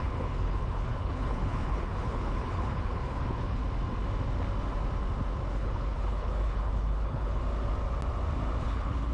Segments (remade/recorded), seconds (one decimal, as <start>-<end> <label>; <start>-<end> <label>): 0.0-3.6 remade; 3.6-5.5 recorded; 5.5-7.4 remade; 7.4-8.6 recorded; 8.6-9.1 remade